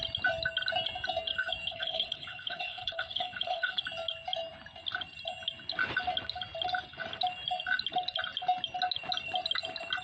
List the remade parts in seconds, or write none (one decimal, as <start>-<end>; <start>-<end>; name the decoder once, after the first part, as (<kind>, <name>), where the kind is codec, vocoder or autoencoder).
1.7-3.8 (codec, HILCodec)